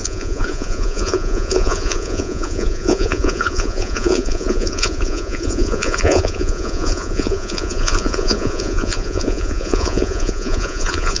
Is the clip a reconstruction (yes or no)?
yes